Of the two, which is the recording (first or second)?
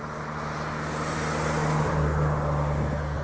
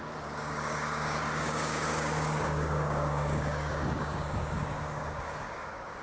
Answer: first